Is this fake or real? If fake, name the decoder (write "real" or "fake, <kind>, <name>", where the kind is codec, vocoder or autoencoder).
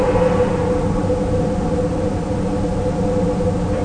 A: real